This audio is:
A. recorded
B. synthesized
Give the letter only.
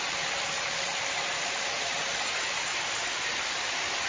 A